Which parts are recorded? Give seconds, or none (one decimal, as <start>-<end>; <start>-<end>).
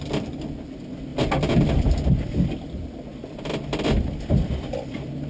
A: 1.1-1.7